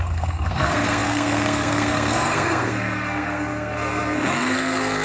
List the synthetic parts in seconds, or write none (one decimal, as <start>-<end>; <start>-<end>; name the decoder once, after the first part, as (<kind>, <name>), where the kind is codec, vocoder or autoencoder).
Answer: 0.0-5.0 (codec, SNAC)